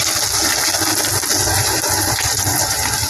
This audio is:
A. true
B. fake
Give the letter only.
A